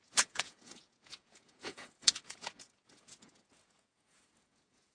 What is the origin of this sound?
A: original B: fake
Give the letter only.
B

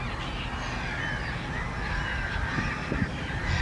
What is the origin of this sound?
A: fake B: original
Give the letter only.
B